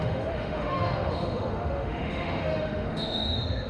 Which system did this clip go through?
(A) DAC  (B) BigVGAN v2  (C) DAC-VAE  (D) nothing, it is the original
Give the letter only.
C